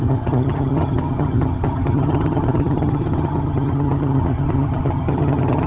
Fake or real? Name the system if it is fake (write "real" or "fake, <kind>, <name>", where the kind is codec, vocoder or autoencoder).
fake, vocoder, HiFi-GAN